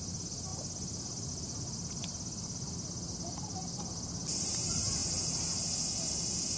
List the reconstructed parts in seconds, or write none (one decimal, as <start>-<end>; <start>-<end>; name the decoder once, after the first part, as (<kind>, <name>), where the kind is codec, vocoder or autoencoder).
none